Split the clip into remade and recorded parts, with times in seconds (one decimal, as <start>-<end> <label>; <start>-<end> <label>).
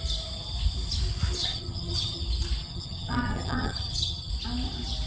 0.0-1.4 recorded; 1.4-2.2 remade; 2.2-2.6 recorded; 2.6-4.3 remade; 4.3-5.1 recorded